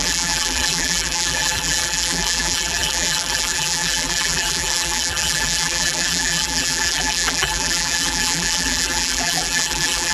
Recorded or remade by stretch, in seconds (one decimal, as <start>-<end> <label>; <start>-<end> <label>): 0.0-10.1 remade